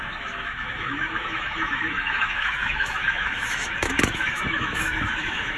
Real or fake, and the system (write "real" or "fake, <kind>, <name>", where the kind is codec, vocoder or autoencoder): fake, autoencoder, DAC-VAE